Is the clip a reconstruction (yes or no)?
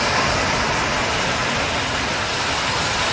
no